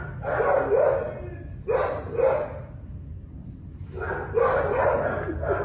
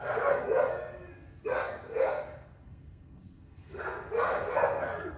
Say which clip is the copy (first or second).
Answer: second